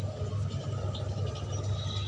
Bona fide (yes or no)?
yes